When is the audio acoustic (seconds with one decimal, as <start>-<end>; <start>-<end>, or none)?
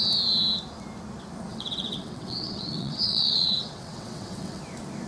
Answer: 0.0-1.5; 4.6-5.1